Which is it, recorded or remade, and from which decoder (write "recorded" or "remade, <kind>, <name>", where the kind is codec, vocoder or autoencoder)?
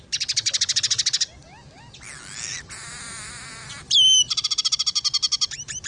recorded